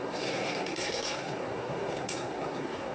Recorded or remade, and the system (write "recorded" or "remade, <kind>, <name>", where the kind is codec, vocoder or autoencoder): remade, codec, SNAC